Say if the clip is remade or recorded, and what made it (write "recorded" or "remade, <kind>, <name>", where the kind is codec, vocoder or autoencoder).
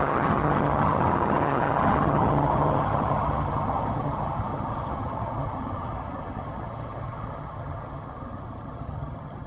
remade, vocoder, HiFi-GAN